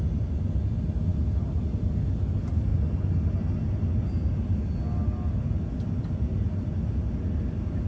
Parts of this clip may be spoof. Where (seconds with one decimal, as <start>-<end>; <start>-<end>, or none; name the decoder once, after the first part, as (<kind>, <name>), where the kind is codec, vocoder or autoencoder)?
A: none